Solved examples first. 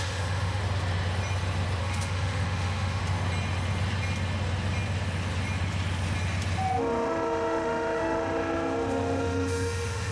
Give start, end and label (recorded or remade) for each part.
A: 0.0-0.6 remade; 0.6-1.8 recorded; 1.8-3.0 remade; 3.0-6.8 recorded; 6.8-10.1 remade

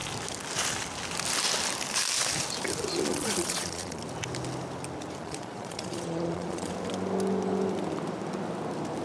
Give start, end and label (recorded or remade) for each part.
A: 0.0-3.1 recorded; 3.1-4.0 remade; 4.0-5.2 recorded; 5.2-6.7 remade; 6.7-9.0 recorded

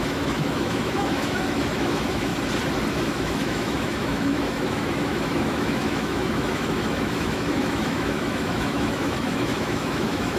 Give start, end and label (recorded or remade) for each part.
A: 0.0-2.3 remade; 2.3-2.9 recorded; 2.9-10.4 remade

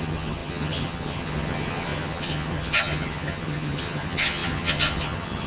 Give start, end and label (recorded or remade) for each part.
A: 0.0-5.5 remade